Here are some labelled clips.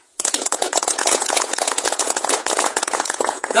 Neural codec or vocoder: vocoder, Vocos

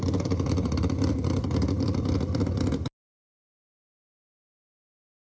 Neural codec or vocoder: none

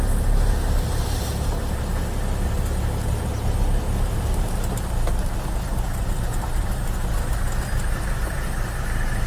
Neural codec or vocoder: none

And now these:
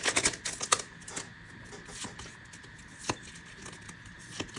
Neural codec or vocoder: none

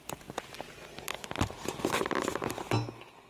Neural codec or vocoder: none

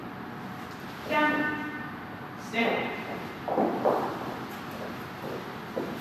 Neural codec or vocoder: none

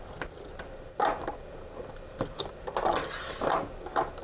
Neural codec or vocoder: none